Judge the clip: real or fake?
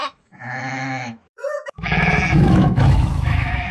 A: fake